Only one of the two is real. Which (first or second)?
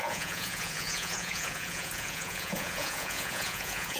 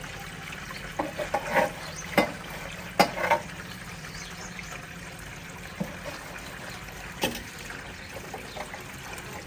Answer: second